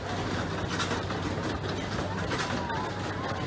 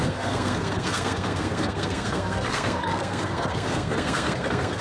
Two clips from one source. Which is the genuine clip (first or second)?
first